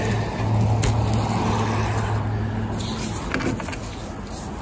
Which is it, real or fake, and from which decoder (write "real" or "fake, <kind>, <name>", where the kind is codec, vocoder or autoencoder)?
real